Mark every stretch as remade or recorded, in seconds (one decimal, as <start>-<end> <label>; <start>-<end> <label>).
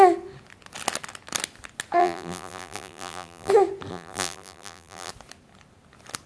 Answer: 0.0-2.0 recorded; 2.0-3.5 remade; 3.5-3.9 recorded; 3.9-5.1 remade; 5.1-6.3 recorded